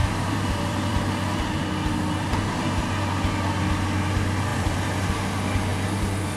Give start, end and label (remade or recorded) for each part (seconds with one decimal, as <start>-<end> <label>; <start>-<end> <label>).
0.0-1.3 remade; 1.3-4.5 recorded; 4.5-5.1 remade; 5.1-6.4 recorded